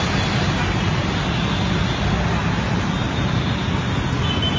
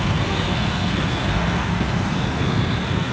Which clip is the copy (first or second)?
second